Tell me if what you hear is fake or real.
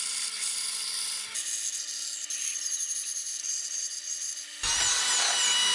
real